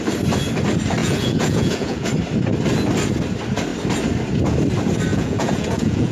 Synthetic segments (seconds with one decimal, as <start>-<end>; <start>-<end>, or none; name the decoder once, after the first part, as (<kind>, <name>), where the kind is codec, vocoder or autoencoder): 1.0-2.1 (vocoder, Vocos); 5.1-6.1